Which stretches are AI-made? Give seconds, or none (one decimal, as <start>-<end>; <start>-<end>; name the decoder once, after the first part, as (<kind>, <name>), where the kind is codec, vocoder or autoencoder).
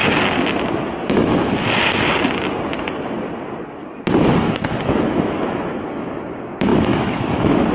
1.1-1.8 (autoencoder, DAC-VAE); 4.4-7.7